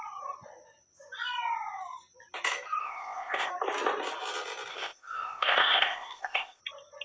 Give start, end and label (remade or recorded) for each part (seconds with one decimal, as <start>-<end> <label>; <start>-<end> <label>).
0.0-2.8 recorded; 2.8-3.5 remade; 3.5-4.7 recorded; 4.7-6.6 remade; 6.6-7.0 recorded